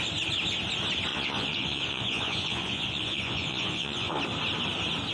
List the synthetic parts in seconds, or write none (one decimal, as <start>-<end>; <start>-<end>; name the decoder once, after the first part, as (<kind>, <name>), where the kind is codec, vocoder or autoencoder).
1.1-4.2 (vocoder, Vocos)